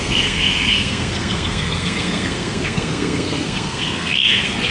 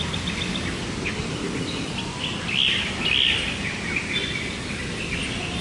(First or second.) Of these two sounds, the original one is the second